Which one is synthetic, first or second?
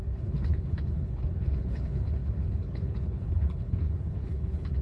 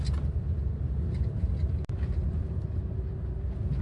first